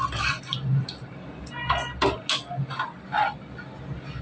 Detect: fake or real real